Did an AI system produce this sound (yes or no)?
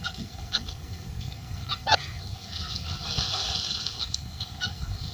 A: yes